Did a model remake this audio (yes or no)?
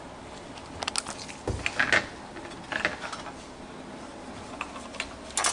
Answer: no